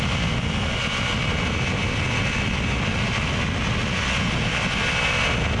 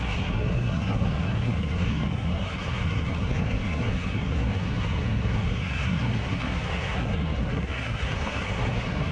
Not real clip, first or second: second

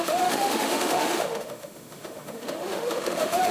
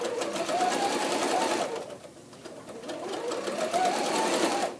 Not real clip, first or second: first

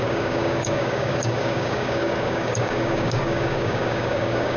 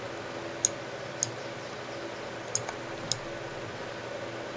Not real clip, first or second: first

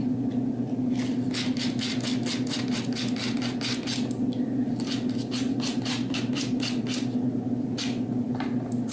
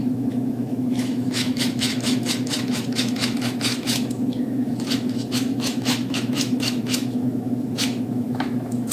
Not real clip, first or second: second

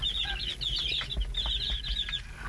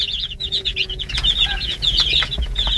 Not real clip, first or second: second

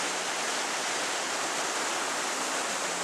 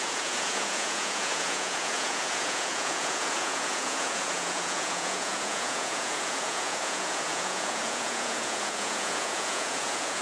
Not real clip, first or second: second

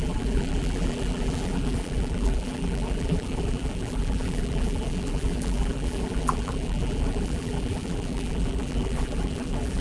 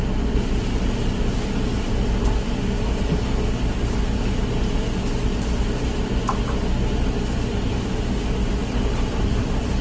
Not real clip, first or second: first